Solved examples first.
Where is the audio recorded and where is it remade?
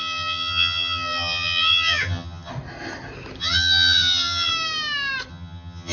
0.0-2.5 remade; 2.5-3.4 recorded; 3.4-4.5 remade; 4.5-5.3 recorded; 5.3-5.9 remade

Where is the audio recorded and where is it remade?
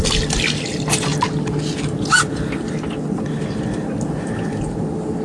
0.0-5.2 recorded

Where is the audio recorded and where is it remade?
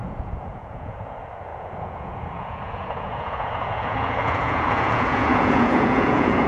0.0-6.5 remade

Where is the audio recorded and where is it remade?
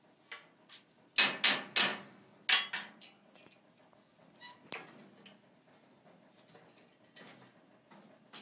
0.0-8.4 recorded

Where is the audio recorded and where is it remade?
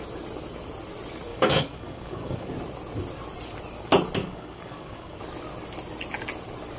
0.0-1.3 recorded; 1.3-2.5 remade; 2.5-4.2 recorded; 4.2-5.2 remade; 5.2-6.8 recorded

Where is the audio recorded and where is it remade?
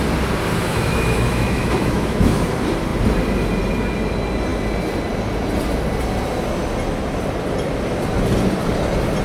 0.0-0.7 recorded; 0.7-2.4 remade; 2.4-9.2 recorded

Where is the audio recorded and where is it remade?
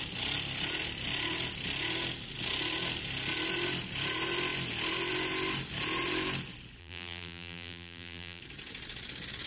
0.0-6.8 recorded; 6.8-8.4 remade; 8.4-9.5 recorded